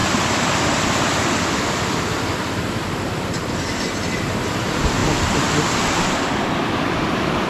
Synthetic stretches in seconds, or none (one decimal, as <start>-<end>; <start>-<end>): none